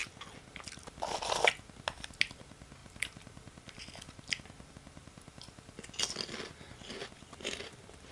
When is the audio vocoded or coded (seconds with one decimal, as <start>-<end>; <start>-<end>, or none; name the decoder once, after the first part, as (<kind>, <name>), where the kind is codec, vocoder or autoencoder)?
none

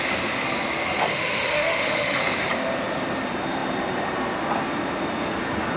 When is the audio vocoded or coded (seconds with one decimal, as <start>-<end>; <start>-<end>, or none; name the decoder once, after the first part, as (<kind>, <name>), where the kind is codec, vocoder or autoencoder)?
1.0-2.2 (autoencoder, DAC-VAE)

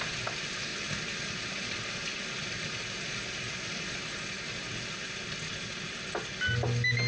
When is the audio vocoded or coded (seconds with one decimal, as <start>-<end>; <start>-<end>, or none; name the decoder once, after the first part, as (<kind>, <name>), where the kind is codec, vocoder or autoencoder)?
none

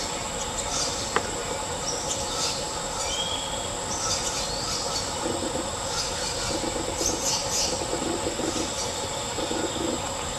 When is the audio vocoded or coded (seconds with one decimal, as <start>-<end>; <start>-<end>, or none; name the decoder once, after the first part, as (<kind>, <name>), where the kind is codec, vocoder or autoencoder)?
none

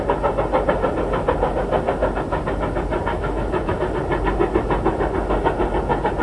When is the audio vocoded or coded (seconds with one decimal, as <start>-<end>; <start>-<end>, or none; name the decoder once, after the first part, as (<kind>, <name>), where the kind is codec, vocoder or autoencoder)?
3.1-3.8 (autoencoder, DAC-VAE)

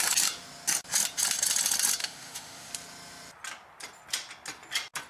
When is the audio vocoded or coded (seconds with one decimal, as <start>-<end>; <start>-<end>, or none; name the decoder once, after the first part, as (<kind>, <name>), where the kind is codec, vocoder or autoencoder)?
2.0-2.7 (autoencoder, DAC-VAE)

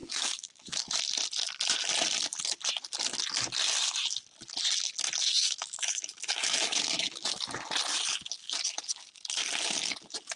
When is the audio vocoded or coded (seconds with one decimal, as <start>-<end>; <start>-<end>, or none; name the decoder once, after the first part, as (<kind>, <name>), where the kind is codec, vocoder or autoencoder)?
0.0-1.0 (autoencoder, DAC-VAE); 5.2-7.4